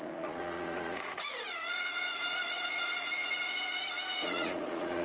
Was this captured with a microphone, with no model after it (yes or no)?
no